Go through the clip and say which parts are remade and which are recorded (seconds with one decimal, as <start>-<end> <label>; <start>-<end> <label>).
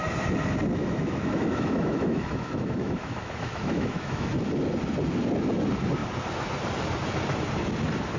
0.0-0.8 recorded; 0.8-4.3 remade; 4.3-8.2 recorded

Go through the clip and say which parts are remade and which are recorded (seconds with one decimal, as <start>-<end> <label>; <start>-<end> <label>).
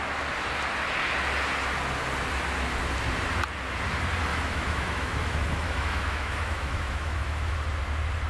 0.0-4.3 recorded; 4.3-7.6 remade; 7.6-8.3 recorded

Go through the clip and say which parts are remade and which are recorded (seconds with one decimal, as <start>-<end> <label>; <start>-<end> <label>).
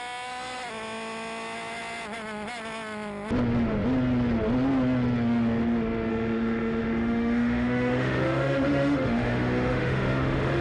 0.0-6.1 recorded; 6.1-10.6 remade